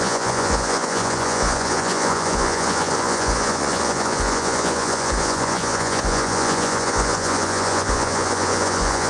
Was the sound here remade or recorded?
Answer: remade